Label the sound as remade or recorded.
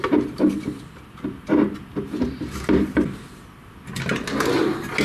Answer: recorded